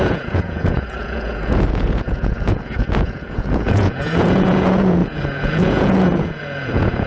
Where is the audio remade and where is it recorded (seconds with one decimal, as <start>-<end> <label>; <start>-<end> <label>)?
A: 0.0-7.1 remade